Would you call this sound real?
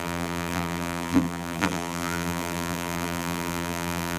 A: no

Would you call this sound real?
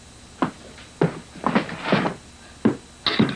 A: yes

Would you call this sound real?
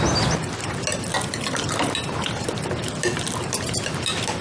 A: yes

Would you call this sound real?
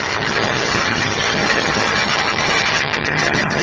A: no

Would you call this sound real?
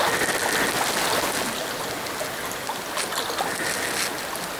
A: yes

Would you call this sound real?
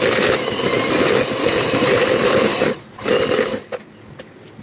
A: yes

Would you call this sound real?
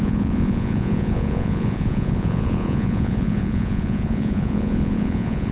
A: no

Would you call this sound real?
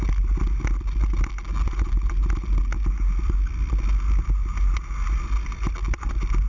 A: yes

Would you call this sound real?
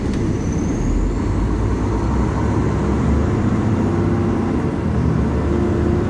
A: yes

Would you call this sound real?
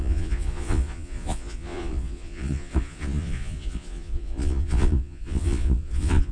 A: no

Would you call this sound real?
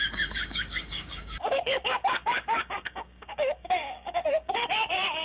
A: no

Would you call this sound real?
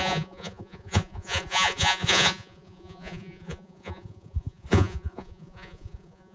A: no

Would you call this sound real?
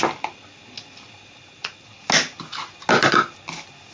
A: yes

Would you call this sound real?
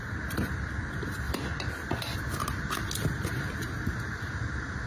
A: yes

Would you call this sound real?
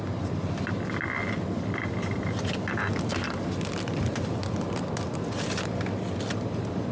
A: yes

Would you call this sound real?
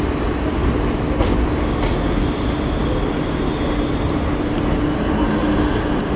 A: yes